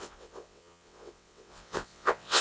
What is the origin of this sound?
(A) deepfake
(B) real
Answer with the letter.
A